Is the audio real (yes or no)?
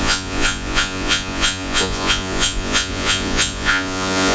no